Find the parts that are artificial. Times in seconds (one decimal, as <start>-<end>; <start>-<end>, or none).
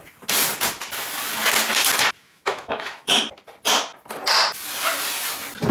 2.2-3.2